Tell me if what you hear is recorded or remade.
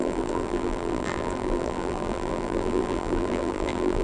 remade